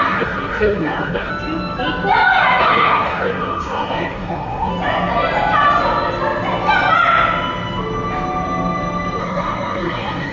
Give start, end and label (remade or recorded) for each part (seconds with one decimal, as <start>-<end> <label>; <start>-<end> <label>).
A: 0.0-1.3 remade; 1.3-2.6 recorded; 2.6-4.7 remade; 4.7-9.2 recorded; 9.2-10.3 remade